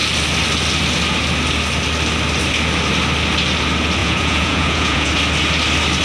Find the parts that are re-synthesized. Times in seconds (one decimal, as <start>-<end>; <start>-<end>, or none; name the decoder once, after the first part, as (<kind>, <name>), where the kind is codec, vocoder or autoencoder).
4.0-5.1 (vocoder, Vocos)